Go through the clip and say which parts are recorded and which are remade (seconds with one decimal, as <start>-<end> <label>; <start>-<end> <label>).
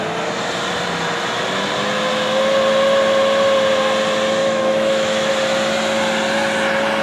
0.0-4.4 recorded; 4.4-5.3 remade; 5.3-7.0 recorded